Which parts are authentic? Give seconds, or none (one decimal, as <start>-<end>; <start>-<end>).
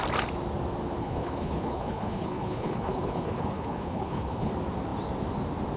0.0-1.0; 4.5-5.8